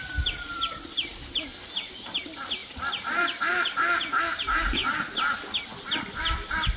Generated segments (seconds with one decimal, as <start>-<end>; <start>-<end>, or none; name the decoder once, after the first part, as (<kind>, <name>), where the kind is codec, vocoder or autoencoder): none